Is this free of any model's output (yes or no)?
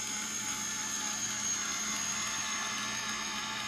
yes